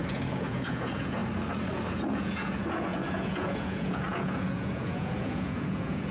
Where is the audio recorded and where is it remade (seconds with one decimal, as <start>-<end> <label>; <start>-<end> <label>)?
0.0-1.2 remade; 1.2-1.9 recorded; 1.9-6.1 remade